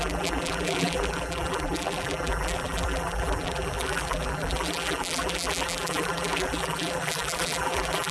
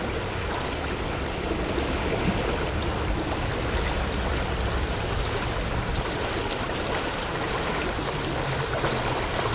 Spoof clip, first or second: first